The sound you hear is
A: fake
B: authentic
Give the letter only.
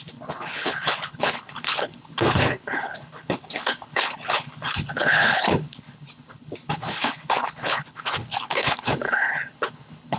A